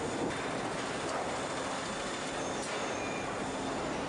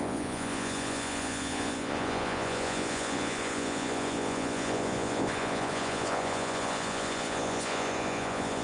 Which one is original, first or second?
first